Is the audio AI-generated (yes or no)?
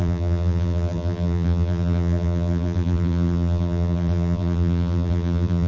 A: yes